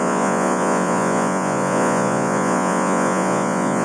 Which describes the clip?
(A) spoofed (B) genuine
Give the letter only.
A